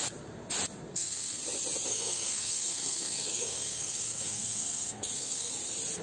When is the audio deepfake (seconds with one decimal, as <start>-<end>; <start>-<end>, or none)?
0.9-1.4; 1.9-5.5